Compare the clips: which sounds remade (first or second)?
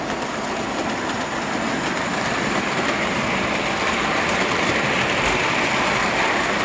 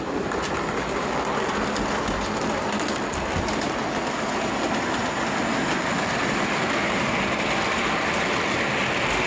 first